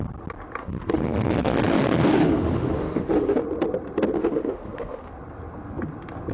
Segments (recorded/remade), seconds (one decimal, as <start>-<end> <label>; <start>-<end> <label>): 0.0-0.6 recorded; 0.6-3.4 remade; 3.4-4.2 recorded; 4.2-5.1 remade; 5.1-6.3 recorded